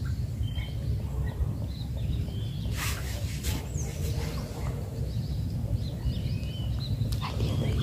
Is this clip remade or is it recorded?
remade